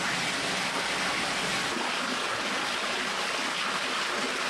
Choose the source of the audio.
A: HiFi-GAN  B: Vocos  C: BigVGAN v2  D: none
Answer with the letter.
D